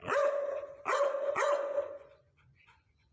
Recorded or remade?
remade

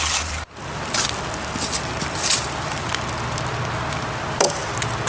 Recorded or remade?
recorded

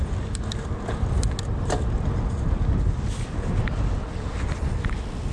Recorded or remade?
recorded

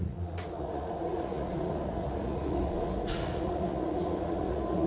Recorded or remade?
remade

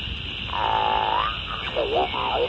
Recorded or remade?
recorded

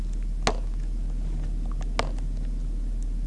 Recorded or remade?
recorded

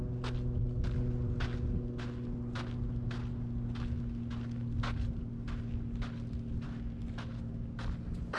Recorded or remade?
recorded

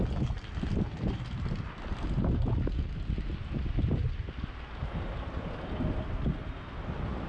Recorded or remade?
recorded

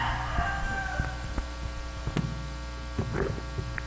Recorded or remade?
recorded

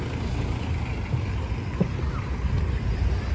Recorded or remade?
recorded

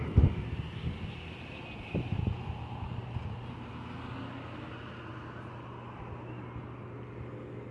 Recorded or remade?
recorded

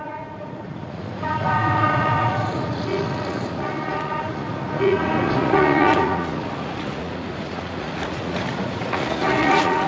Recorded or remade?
remade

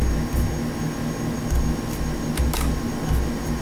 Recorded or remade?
recorded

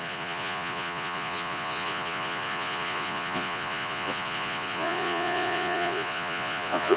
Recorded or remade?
remade